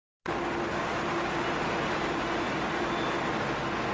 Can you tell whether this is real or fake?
real